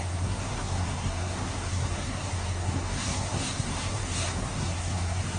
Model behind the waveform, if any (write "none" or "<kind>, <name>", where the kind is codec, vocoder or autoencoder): codec, SNAC